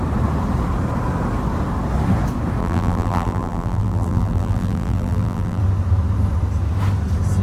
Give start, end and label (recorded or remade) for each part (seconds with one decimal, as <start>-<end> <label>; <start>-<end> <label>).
0.0-2.6 recorded; 2.6-5.6 remade; 5.6-7.4 recorded